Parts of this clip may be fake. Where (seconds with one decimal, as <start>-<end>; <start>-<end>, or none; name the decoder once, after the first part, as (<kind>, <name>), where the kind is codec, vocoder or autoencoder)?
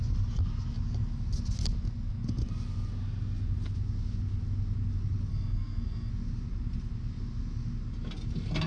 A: 5.3-6.1 (codec, SNAC)